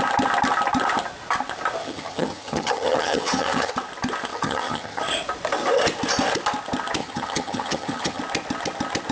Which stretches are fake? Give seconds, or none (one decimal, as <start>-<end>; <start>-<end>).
1.8-3.7; 4.3-5.0; 7.0-8.2